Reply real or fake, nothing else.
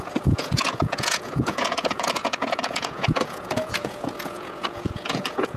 fake